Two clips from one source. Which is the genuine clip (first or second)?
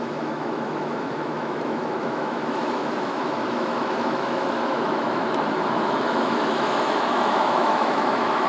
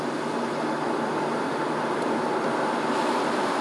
second